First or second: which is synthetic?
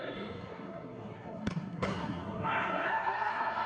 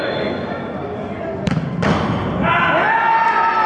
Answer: first